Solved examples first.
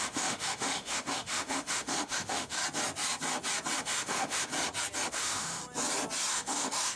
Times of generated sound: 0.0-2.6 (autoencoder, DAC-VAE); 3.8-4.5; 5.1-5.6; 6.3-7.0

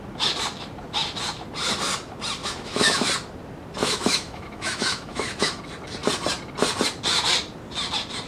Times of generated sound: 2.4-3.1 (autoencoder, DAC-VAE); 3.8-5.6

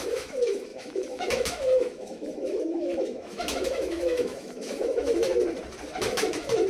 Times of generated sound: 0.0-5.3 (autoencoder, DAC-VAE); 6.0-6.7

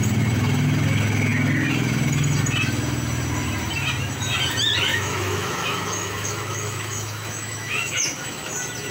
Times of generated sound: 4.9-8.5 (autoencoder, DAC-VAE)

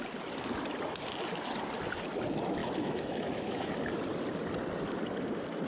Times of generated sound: 2.6-3.7 (autoencoder, DAC-VAE)